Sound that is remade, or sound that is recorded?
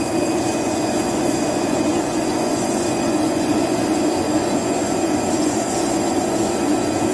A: remade